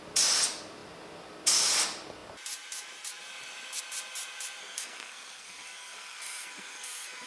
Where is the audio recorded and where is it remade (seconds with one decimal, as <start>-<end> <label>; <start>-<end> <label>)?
0.0-4.6 recorded; 4.6-7.3 remade